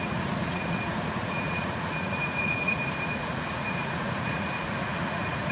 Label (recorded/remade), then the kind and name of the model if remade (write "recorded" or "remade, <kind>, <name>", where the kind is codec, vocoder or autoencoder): remade, vocoder, Vocos